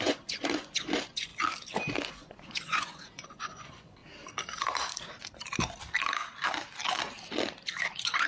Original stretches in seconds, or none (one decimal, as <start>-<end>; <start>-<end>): 1.3-2.1; 4.0-7.8